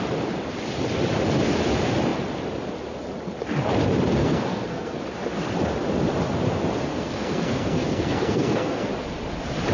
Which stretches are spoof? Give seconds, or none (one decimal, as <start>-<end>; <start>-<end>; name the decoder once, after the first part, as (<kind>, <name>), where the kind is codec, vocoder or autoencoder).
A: 4.2-5.0 (codec, SNAC); 6.9-8.9